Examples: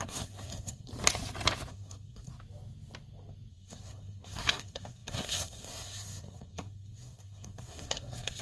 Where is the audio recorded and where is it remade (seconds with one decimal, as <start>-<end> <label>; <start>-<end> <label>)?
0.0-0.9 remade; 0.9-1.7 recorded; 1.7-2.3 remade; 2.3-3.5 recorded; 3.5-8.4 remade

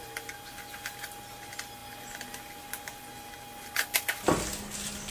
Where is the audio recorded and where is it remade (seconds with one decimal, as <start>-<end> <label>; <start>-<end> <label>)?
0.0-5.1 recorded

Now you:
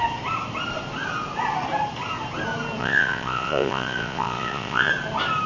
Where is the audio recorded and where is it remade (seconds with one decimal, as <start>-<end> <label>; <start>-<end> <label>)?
0.0-2.8 recorded; 2.8-4.9 remade; 4.9-5.5 recorded

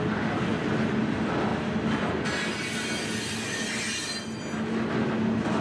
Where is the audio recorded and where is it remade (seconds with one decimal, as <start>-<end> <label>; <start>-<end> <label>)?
0.0-5.6 recorded

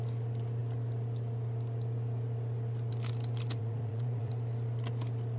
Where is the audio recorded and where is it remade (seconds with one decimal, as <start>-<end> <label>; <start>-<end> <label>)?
0.0-3.6 recorded; 3.6-4.3 remade; 4.3-5.4 recorded

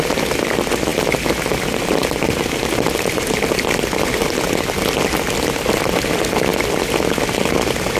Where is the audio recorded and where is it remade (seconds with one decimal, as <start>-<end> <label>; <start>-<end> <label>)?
0.0-8.0 recorded

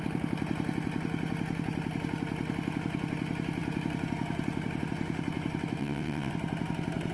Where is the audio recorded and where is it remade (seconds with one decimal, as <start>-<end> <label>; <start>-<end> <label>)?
0.0-5.8 recorded; 5.8-6.3 remade; 6.3-7.1 recorded

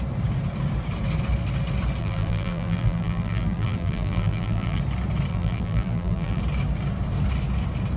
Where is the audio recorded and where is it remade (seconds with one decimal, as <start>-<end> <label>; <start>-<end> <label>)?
0.0-2.0 recorded; 2.0-4.8 remade; 4.8-5.3 recorded; 5.3-6.4 remade; 6.4-8.0 recorded